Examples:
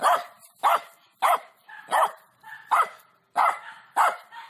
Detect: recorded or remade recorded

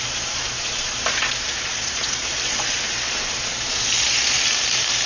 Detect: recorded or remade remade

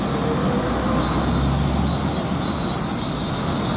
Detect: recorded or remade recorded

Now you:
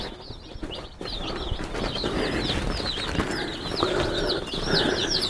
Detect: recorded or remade recorded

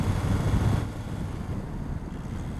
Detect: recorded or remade recorded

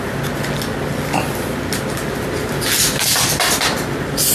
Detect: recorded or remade recorded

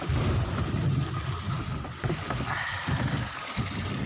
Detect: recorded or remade remade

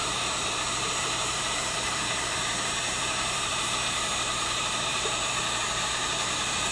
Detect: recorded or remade remade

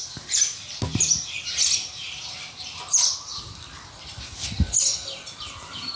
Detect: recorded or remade recorded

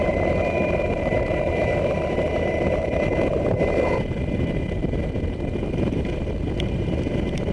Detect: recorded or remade remade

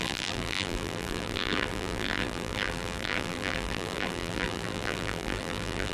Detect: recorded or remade remade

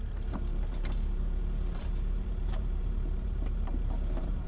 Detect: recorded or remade remade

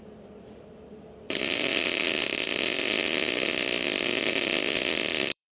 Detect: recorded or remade remade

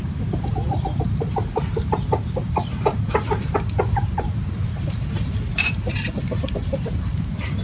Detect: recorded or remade remade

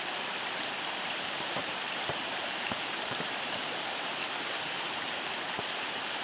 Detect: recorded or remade remade